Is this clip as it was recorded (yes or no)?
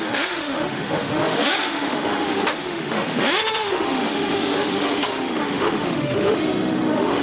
no